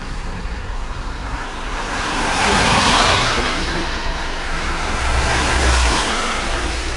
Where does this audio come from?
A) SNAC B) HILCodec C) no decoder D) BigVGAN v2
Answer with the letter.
A